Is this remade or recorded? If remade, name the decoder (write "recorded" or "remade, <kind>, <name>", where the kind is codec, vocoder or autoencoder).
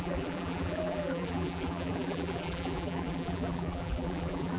remade, vocoder, BigVGAN v2